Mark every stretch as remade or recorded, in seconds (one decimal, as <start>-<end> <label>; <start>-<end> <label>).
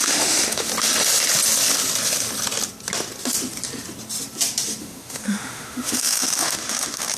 0.0-0.7 remade; 0.7-4.8 recorded; 4.8-7.2 remade